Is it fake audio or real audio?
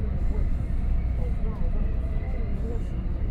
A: real